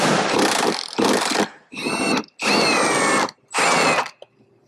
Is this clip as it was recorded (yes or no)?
no